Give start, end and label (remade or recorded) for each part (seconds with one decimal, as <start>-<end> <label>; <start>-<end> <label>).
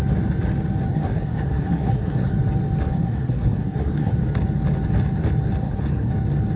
0.0-0.9 recorded; 0.9-2.3 remade; 2.3-2.9 recorded; 2.9-4.1 remade; 4.1-5.6 recorded; 5.6-6.1 remade; 6.1-6.6 recorded